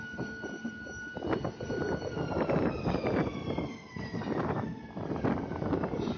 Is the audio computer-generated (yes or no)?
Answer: yes